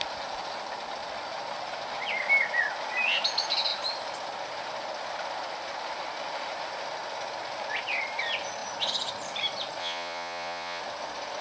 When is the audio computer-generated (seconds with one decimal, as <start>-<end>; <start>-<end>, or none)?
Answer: 9.8-10.8